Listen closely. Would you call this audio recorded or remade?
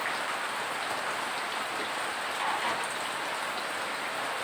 recorded